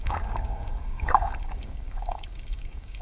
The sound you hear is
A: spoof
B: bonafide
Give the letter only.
A